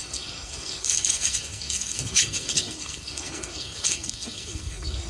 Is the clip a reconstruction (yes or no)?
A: yes